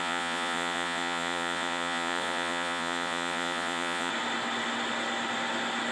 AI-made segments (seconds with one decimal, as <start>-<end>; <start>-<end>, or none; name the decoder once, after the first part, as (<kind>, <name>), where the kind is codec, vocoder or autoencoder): 0.0-4.1 (vocoder, Vocos)